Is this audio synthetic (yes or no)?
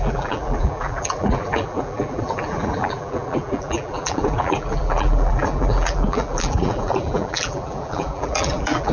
yes